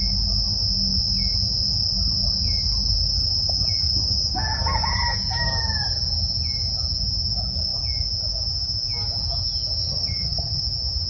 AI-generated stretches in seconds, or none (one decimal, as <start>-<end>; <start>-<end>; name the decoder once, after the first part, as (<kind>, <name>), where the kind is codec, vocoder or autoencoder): 9.8-10.6 (vocoder, HiFi-GAN)